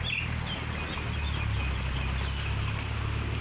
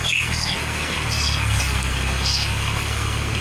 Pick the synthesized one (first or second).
second